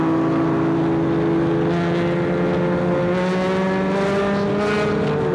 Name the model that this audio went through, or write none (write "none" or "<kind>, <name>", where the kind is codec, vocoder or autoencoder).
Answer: none